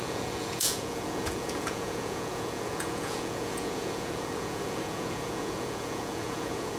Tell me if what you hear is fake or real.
fake